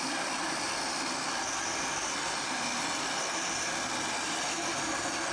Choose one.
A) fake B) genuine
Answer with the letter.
B